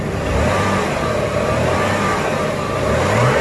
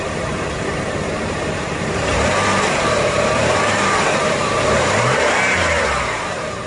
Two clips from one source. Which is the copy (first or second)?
second